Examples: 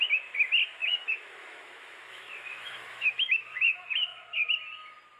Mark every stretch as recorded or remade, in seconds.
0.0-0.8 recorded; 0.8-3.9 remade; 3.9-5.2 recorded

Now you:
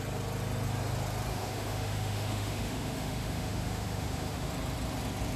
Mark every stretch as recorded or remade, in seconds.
0.0-1.3 recorded; 1.3-4.5 remade; 4.5-5.4 recorded

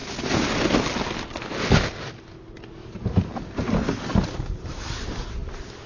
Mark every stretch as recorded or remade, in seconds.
0.0-5.9 recorded